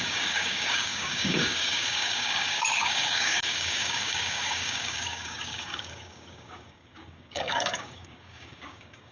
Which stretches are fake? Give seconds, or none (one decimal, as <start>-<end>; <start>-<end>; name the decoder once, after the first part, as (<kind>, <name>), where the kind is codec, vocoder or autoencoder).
0.0-9.1 (codec, DAC)

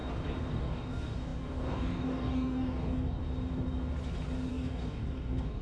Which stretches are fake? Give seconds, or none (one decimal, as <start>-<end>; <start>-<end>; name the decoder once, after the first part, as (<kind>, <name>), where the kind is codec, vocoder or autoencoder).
0.5-3.2 (codec, DAC); 4.5-5.6

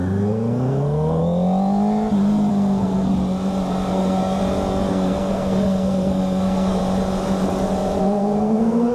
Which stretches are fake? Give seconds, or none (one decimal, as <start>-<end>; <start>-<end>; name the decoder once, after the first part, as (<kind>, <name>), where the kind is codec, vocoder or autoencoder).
0.0-1.2 (codec, SNAC); 2.5-3.1; 3.9-4.4; 4.9-6.8; 8.0-8.9

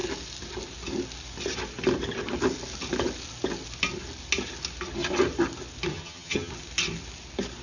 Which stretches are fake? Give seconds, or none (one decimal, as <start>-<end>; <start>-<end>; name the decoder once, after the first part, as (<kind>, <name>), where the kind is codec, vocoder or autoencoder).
5.9-6.5 (vocoder, HiFi-GAN)

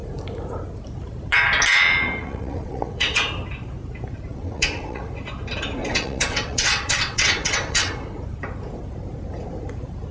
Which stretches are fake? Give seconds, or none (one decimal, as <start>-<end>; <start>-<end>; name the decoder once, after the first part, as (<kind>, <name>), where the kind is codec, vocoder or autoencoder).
2.2-3.2 (vocoder, WaveNeXt); 4.3-5.1; 5.8-7.9

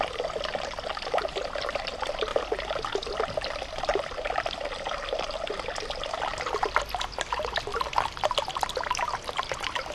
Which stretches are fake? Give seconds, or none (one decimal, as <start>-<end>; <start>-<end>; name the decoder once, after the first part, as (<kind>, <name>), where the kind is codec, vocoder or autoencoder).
3.9-4.7 (vocoder, BigVGAN v2); 6.3-6.8